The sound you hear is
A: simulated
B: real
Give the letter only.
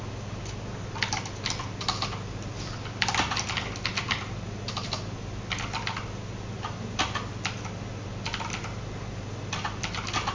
B